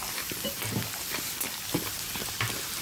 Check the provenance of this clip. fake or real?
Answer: real